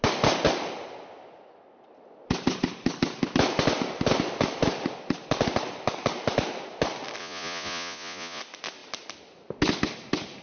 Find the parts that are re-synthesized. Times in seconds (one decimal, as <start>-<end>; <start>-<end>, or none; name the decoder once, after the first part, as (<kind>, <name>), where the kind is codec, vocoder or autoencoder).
7.2-8.4 (vocoder, Vocos)